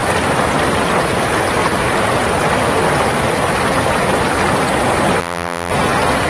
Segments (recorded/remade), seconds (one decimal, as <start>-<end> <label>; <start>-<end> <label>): 0.0-5.2 recorded; 5.2-5.7 remade; 5.7-6.3 recorded